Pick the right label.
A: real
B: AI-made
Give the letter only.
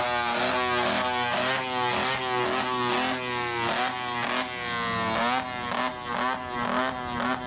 A